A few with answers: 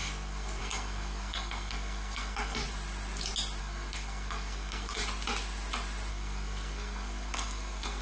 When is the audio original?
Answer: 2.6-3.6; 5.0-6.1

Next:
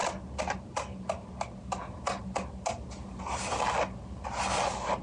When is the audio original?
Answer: 0.0-5.0

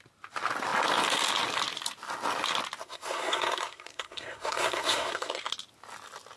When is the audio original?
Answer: 0.0-2.8; 5.5-6.4

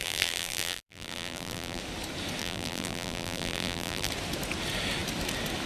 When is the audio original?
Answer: 1.8-2.4; 4.1-5.7

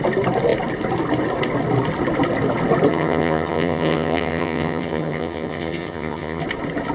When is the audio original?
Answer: 0.0-2.9; 6.4-6.9

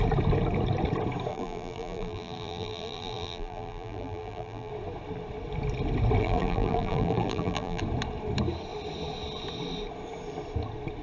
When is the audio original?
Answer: 0.0-1.3; 4.7-6.2; 7.8-11.0

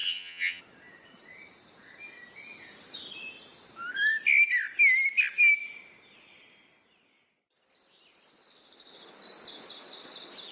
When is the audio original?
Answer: 0.6-10.5

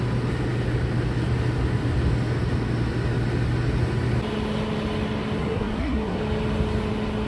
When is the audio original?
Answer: 0.0-5.4; 6.2-7.3